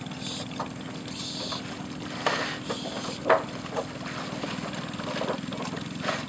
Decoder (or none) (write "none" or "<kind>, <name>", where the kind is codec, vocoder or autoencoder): none